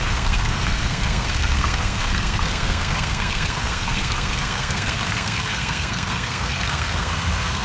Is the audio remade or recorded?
remade